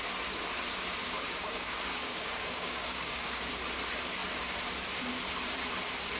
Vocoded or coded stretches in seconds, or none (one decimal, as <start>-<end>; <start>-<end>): 1.0-3.4